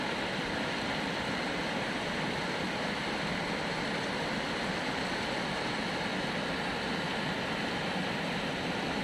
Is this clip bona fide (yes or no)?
yes